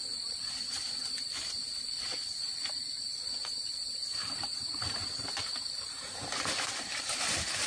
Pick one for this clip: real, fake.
fake